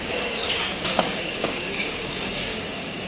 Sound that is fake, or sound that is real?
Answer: fake